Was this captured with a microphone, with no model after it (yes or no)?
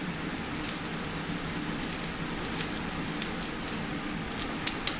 yes